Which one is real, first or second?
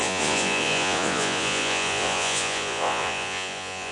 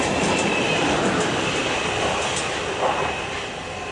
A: second